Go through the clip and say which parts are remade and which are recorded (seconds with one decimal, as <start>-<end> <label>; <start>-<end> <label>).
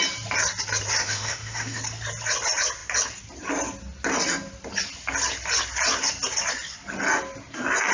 0.0-1.0 recorded; 1.0-1.8 remade; 1.8-7.9 recorded